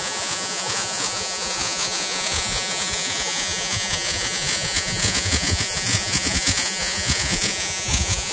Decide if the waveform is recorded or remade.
remade